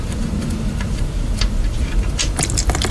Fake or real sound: fake